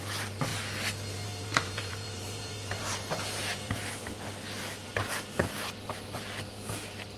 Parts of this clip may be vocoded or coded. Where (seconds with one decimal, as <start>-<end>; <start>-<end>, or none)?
0.0-0.5; 1.1-4.9; 5.4-7.2